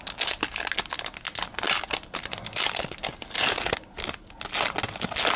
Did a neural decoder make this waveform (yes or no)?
no